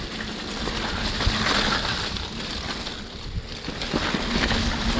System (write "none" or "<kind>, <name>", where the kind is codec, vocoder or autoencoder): none